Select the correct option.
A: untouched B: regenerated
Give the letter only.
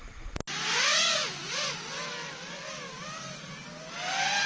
A